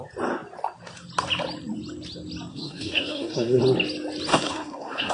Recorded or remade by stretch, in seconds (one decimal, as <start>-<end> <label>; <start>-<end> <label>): 0.0-2.5 recorded; 2.5-3.6 remade; 3.6-4.3 recorded; 4.3-5.1 remade